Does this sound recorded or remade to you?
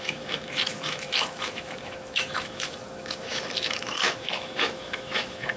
remade